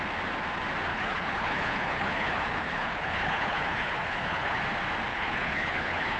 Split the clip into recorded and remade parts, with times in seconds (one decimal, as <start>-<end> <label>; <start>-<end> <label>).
0.0-0.9 recorded; 0.9-4.6 remade; 4.6-5.1 recorded; 5.1-6.2 remade